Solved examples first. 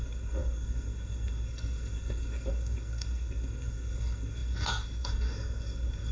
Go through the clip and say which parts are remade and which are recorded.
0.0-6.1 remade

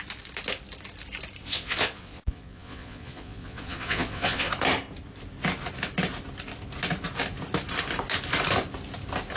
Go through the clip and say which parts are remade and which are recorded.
0.0-1.4 recorded; 1.4-4.5 remade; 4.5-9.4 recorded

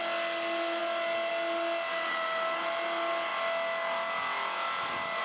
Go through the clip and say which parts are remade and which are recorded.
0.0-5.2 recorded

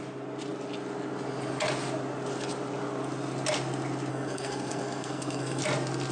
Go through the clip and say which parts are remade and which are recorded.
0.0-4.1 recorded; 4.1-5.6 remade; 5.6-6.1 recorded

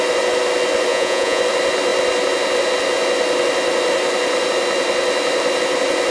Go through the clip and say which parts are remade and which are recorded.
0.0-0.9 recorded; 0.9-1.4 remade; 1.4-6.1 recorded

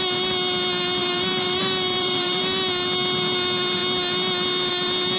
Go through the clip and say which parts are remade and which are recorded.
0.0-1.0 recorded; 1.0-2.4 remade; 2.4-5.2 recorded

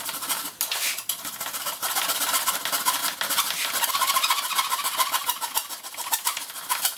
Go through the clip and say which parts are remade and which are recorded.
0.0-7.0 recorded

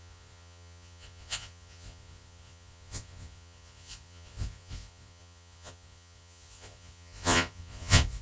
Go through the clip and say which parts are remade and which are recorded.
0.0-8.2 remade